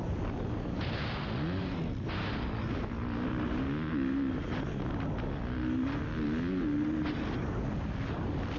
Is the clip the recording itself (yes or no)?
yes